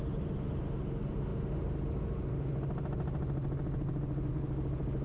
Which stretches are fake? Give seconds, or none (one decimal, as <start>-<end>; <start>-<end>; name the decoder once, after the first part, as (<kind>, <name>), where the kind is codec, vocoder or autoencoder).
none